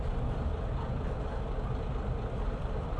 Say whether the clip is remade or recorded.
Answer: recorded